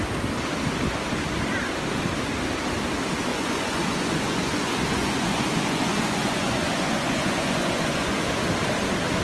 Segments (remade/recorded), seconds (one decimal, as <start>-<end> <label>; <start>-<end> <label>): 0.0-3.3 recorded; 3.3-8.5 remade; 8.5-9.2 recorded